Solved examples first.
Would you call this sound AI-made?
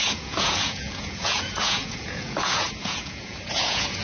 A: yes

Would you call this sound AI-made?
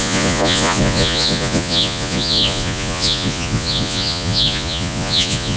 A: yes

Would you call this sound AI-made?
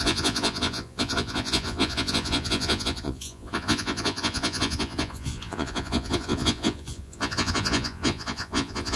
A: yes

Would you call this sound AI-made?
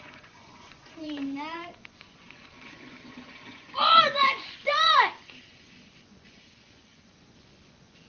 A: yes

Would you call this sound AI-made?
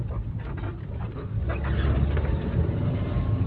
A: no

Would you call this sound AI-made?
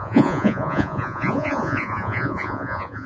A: yes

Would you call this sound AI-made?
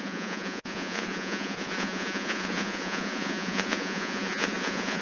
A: yes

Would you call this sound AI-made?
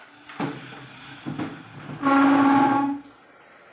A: no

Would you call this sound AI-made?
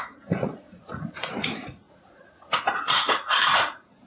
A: yes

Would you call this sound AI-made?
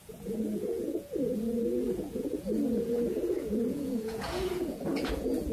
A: yes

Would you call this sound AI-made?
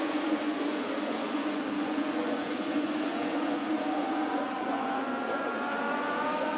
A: yes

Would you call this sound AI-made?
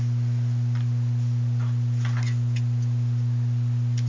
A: no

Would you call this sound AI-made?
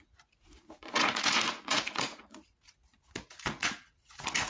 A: yes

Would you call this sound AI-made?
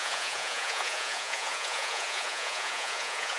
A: yes